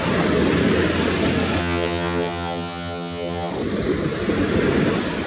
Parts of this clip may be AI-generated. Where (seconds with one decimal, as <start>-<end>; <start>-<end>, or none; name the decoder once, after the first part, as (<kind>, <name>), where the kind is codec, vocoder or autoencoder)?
1.6-3.5 (vocoder, HiFi-GAN)